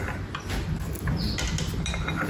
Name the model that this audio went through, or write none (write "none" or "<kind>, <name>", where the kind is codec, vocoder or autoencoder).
none